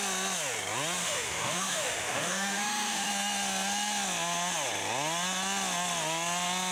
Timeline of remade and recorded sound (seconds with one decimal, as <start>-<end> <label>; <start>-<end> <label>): 0.0-1.0 recorded; 1.0-3.1 remade; 3.1-6.7 recorded